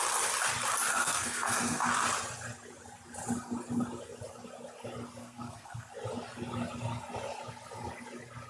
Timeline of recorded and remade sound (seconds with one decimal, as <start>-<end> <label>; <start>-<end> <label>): 0.0-0.9 recorded; 0.9-1.9 remade; 1.9-5.2 recorded; 5.2-5.9 remade; 5.9-8.5 recorded

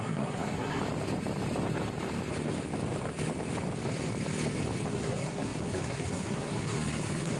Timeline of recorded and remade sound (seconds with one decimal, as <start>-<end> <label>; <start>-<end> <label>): 0.0-0.8 remade; 0.8-4.9 recorded; 4.9-7.4 remade

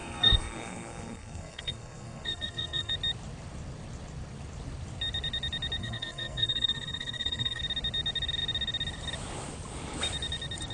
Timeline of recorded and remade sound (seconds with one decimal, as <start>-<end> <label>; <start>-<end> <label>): 0.0-2.9 remade; 2.9-5.8 recorded; 5.8-7.6 remade; 7.6-10.7 recorded

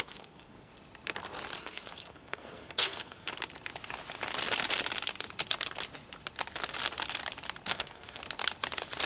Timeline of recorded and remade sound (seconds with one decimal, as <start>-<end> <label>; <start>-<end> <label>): 0.0-0.7 remade; 0.7-1.6 recorded; 1.6-3.3 remade; 3.3-7.7 recorded; 7.7-8.2 remade; 8.2-9.1 recorded

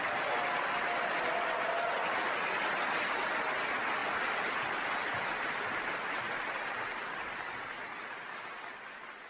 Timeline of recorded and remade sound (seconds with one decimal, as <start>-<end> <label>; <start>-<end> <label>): 0.0-9.3 recorded